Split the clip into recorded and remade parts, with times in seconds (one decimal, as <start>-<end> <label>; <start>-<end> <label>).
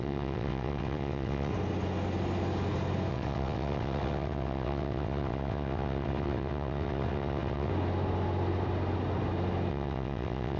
0.0-1.5 remade; 1.5-3.1 recorded; 3.1-7.7 remade; 7.7-9.7 recorded; 9.7-10.6 remade